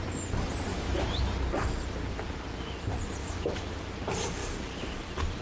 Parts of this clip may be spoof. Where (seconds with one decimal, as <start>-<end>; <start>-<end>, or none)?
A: 0.7-1.2; 3.2-3.8